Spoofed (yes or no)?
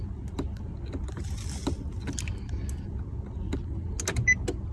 no